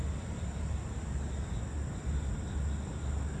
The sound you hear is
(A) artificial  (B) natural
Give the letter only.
B